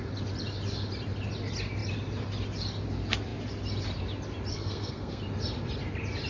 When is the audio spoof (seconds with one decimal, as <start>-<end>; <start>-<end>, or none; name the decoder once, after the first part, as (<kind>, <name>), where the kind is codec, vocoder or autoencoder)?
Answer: 4.5-5.2 (codec, SNAC)